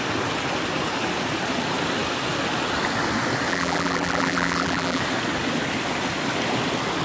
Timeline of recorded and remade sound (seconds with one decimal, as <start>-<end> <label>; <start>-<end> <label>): 0.0-3.5 recorded; 3.5-5.0 remade; 5.0-7.0 recorded